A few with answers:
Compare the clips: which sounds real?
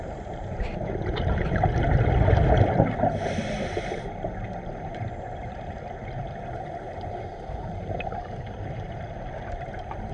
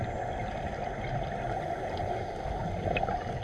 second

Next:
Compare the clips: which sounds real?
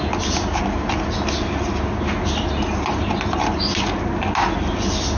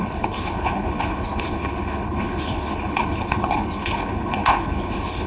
first